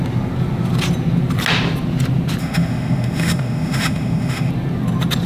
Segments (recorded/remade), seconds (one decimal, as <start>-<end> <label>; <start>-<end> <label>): 0.0-2.4 recorded; 2.4-4.5 remade; 4.5-5.3 recorded